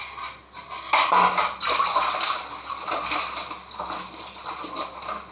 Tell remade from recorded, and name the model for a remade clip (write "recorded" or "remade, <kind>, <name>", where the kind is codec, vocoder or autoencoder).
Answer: recorded